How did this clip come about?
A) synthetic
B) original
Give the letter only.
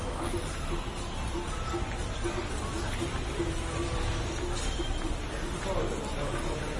B